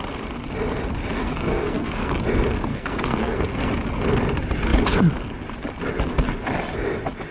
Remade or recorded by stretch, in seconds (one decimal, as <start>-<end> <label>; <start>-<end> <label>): 0.0-1.2 recorded; 1.2-2.1 remade; 2.1-2.7 recorded; 2.7-3.7 remade; 3.7-7.3 recorded